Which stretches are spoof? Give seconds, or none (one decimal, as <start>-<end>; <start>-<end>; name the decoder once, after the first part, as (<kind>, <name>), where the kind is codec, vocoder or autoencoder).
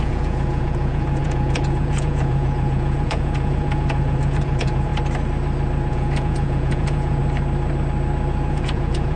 0.0-4.9 (vocoder, Vocos); 5.9-7.2; 8.5-9.2